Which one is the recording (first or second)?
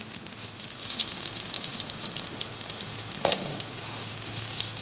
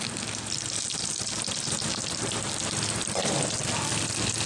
second